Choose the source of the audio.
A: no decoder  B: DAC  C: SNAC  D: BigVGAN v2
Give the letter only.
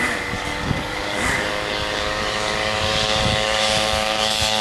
B